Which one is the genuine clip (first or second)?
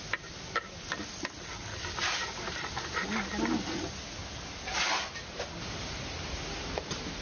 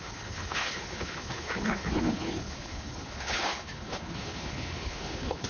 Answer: first